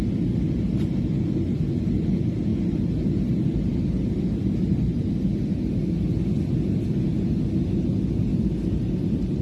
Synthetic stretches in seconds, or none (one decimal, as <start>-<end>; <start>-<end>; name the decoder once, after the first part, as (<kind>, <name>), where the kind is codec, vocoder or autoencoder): 8.6-9.4 (vocoder, BigVGAN v2)